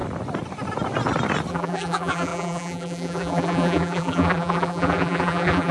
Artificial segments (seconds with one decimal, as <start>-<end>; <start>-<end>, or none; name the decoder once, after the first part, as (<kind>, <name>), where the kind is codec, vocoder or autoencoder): 1.5-5.7 (vocoder, BigVGAN v2)

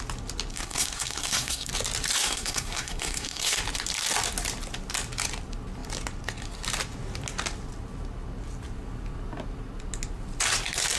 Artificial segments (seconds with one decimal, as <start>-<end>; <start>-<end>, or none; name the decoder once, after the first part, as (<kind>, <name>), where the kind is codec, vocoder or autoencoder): 0.5-1.7 (codec, SNAC); 2.2-3.6

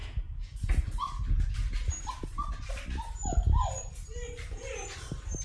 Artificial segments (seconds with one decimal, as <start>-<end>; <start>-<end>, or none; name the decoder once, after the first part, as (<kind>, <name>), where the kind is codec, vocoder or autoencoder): none

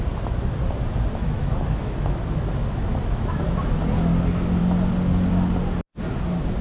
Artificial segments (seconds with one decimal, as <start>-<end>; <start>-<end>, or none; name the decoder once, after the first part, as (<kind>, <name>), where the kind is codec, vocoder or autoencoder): 1.2-2.2 (autoencoder, DAC-VAE); 2.6-3.8

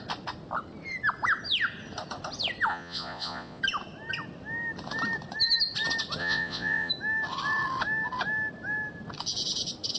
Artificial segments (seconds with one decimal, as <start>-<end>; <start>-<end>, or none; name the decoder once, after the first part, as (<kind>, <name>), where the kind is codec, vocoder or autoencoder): 2.7-3.6 (vocoder, Vocos); 6.2-6.9

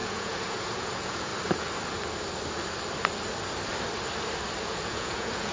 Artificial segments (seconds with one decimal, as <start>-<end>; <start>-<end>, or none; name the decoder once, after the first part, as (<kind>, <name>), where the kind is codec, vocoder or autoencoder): 0.0-1.3 (vocoder, Vocos); 4.6-5.5

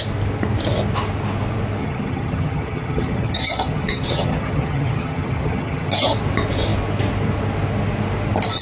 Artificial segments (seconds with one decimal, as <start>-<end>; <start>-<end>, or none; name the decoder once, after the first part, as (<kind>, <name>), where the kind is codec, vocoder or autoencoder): 1.8-5.9 (vocoder, HiFi-GAN)